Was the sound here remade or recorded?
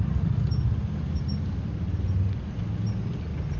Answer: recorded